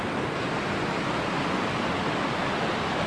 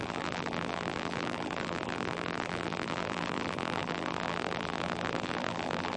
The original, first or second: first